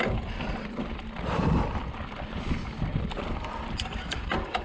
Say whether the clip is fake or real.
fake